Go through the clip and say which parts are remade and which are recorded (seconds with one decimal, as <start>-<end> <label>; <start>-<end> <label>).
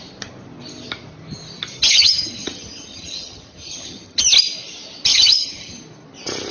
0.0-1.8 recorded; 1.8-4.2 remade; 4.2-5.1 recorded; 5.1-5.8 remade; 5.8-6.5 recorded